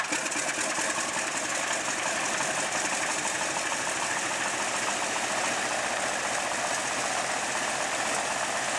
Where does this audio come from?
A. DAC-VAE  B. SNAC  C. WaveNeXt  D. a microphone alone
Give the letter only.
D